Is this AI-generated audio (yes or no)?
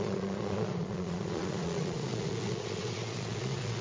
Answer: yes